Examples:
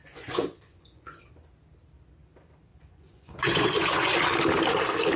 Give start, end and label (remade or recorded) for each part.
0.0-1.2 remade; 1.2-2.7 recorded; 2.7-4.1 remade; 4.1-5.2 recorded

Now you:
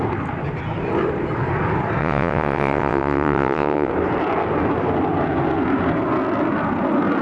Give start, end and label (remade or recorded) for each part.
0.0-2.0 recorded; 2.0-3.9 remade; 3.9-7.2 recorded

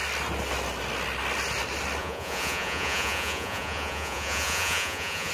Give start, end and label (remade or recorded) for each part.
0.0-2.0 recorded; 2.0-5.3 remade